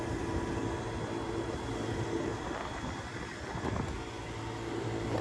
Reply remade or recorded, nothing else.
recorded